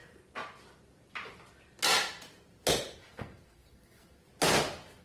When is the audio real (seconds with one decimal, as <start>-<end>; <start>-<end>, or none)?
0.0-3.0; 4.2-5.0